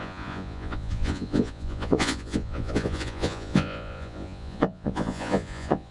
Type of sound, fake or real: fake